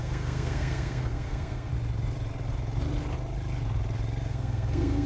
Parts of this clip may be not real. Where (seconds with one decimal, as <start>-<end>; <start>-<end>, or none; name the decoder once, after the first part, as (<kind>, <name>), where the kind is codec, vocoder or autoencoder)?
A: 0.0-1.7 (codec, SNAC); 4.3-5.1